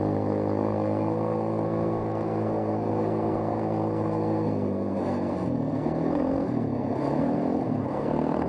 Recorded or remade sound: remade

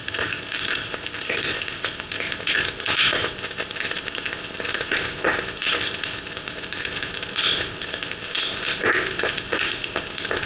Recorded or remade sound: remade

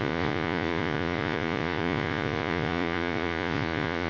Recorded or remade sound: remade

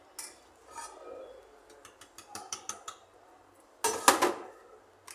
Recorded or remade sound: recorded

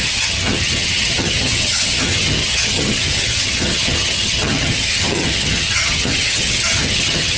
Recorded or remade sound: remade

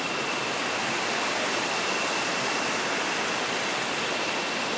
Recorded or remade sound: recorded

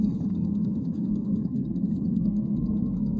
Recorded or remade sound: remade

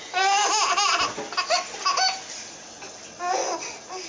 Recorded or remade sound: recorded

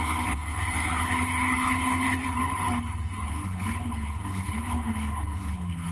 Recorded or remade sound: remade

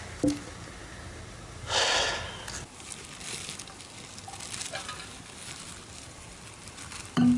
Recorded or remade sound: recorded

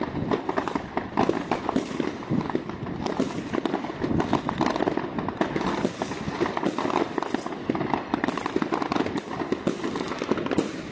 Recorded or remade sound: recorded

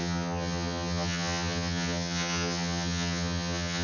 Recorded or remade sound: remade